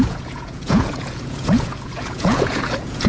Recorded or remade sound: remade